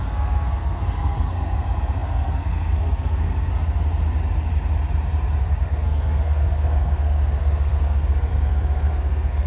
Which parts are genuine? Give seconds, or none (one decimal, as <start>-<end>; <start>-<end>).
3.5-5.4